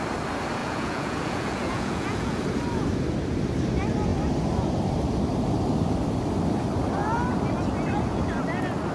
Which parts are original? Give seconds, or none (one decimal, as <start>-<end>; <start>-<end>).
0.0-0.6; 2.4-8.9